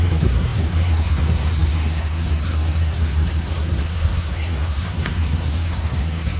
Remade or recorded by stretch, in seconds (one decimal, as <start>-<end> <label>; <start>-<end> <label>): 0.0-6.4 remade